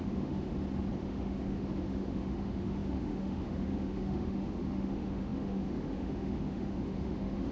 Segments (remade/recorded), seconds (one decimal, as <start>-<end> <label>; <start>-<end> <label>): 0.0-0.5 remade; 0.5-1.0 recorded; 1.0-7.5 remade

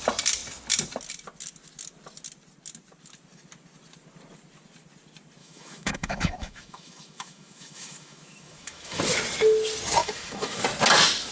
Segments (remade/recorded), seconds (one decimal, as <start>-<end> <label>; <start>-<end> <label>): 0.0-5.4 recorded; 5.4-9.0 remade; 9.0-10.0 recorded; 10.0-10.6 remade; 10.6-11.3 recorded

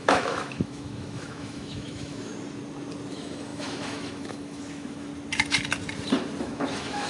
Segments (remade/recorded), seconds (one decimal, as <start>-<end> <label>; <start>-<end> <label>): 0.0-2.3 remade; 2.3-3.1 recorded; 3.1-5.1 remade; 5.1-6.4 recorded; 6.4-7.1 remade

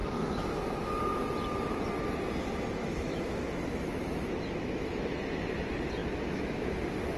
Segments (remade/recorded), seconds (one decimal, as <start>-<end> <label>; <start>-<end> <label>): 0.0-0.9 remade; 0.9-2.8 recorded; 2.8-5.0 remade; 5.0-6.0 recorded; 6.0-6.8 remade; 6.8-7.2 recorded

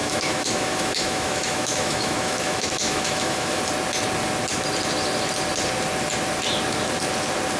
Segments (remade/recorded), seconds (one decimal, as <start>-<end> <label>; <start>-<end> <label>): 0.0-3.6 remade; 3.6-7.6 recorded